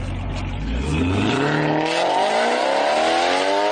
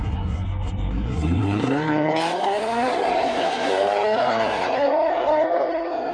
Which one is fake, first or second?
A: second